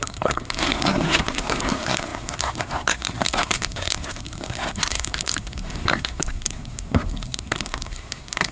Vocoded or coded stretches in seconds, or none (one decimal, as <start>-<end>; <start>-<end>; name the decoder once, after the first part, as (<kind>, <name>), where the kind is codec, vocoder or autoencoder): 0.0-8.5 (codec, SNAC)